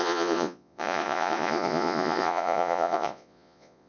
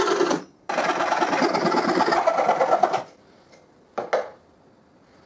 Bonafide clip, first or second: second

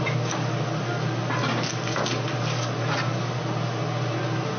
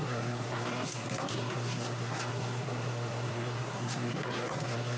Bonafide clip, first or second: first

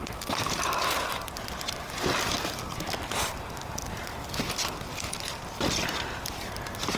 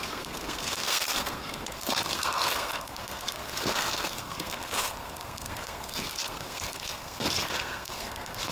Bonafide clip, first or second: first